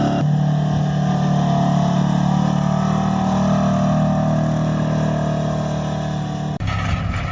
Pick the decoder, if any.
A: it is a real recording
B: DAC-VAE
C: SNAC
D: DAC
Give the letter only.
A